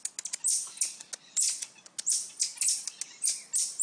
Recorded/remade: recorded